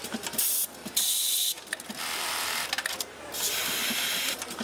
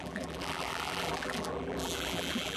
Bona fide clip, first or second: first